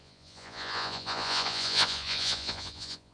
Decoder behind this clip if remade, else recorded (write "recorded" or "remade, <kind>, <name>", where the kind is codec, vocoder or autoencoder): remade, vocoder, Vocos